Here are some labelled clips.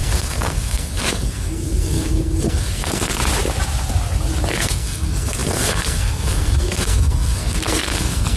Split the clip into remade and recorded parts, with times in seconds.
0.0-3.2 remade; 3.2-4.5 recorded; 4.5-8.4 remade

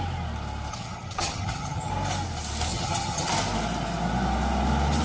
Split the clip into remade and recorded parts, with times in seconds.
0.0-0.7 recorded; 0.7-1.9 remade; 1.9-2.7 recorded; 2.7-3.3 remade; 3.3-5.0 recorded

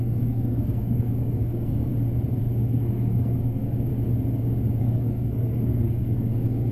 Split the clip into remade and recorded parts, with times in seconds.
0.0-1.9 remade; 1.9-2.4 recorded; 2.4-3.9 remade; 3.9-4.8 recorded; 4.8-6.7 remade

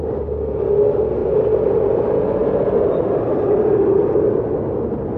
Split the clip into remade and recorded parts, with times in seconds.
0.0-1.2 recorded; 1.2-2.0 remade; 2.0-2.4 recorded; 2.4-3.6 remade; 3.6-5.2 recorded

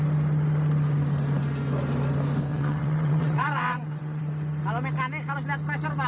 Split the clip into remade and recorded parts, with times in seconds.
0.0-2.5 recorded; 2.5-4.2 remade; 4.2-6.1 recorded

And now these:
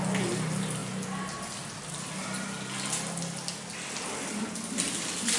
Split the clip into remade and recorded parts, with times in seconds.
0.0-5.4 recorded

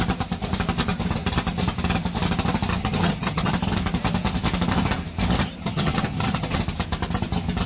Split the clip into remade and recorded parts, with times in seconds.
0.0-2.8 recorded; 2.8-3.5 remade; 3.5-5.6 recorded; 5.6-6.6 remade; 6.6-7.7 recorded